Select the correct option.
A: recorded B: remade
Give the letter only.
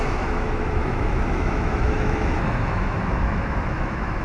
B